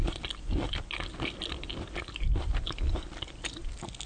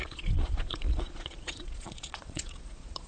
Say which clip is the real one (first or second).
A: first